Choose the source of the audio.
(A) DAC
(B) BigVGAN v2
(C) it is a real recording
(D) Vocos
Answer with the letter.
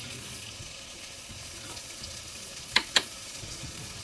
D